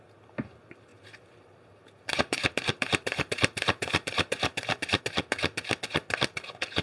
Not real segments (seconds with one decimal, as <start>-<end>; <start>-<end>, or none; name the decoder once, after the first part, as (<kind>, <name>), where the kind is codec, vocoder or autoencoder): 0.9-5.0 (vocoder, BigVGAN v2)